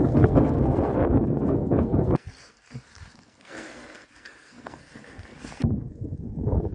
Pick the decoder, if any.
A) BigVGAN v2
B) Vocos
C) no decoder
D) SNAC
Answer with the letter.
D